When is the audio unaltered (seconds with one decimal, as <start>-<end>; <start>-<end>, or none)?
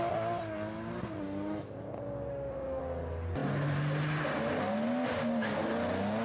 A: 0.0-2.3; 2.8-6.2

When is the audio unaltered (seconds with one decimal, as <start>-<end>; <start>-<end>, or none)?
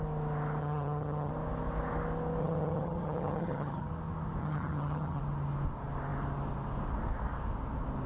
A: 0.0-0.6; 1.3-2.4; 3.9-4.4; 5.2-8.1